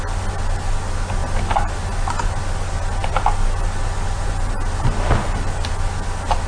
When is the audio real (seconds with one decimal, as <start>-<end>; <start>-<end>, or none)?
0.0-6.5